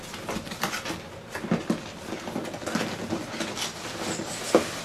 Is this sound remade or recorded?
recorded